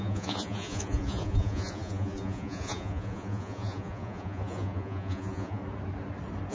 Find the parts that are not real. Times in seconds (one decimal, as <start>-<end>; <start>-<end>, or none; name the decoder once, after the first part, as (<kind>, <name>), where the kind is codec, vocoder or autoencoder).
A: 0.0-5.6 (vocoder, Vocos)